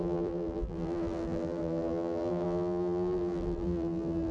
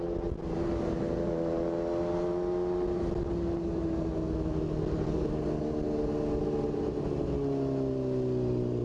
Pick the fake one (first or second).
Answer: first